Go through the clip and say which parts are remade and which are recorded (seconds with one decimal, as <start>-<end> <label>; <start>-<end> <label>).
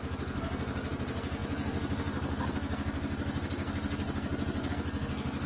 0.0-5.5 remade